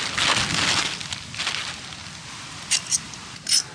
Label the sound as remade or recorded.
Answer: recorded